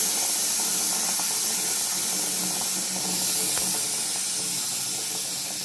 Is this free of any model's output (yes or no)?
yes